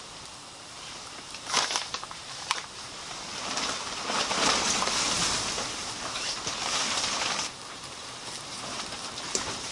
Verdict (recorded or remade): remade